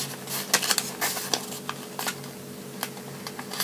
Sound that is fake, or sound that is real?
real